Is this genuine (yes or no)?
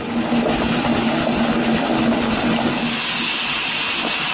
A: yes